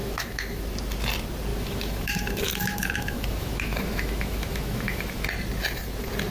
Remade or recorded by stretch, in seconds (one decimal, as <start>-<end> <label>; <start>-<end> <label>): 0.0-0.6 remade; 0.6-1.5 recorded; 1.5-5.2 remade; 5.2-6.3 recorded